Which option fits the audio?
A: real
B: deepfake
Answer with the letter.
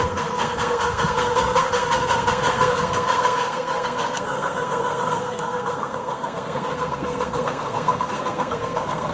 B